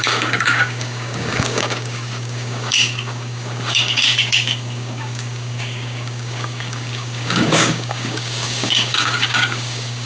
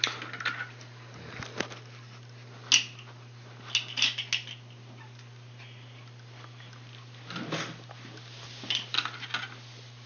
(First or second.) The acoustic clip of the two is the second